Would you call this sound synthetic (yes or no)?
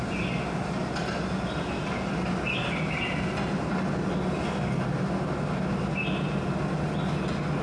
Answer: no